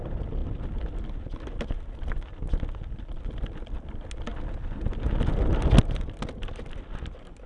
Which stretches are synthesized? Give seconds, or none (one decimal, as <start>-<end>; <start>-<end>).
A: none